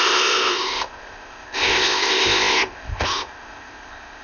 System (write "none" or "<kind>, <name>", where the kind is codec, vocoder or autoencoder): codec, ZipCodec